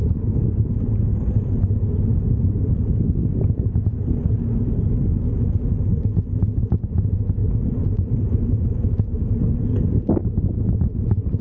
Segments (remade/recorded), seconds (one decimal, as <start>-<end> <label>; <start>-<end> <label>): 0.0-7.4 recorded; 7.4-8.1 remade; 8.1-10.2 recorded; 10.2-10.8 remade; 10.8-11.4 recorded